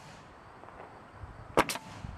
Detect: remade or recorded recorded